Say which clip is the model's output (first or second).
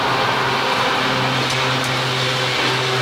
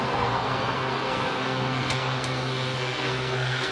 second